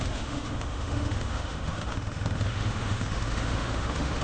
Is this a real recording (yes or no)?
no